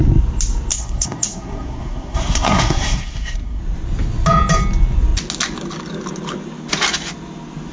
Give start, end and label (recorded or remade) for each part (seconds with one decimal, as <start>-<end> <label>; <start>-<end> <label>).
0.0-0.7 recorded; 0.7-3.6 remade; 3.6-7.7 recorded